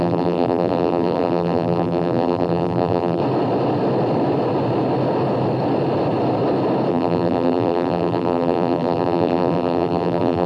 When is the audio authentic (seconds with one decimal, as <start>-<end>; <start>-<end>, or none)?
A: 3.2-6.9